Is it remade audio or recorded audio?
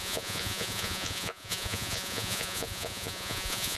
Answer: remade